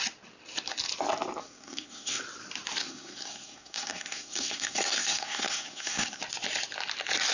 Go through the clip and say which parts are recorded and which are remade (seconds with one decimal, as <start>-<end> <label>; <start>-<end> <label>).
0.0-1.4 recorded; 1.4-2.2 remade; 2.2-2.8 recorded; 2.8-6.2 remade; 6.2-7.3 recorded